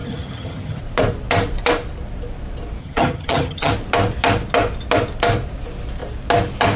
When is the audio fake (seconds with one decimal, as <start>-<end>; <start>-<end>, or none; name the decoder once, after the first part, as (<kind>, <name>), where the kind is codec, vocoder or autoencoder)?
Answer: 0.0-0.8 (vocoder, HiFi-GAN); 2.8-3.7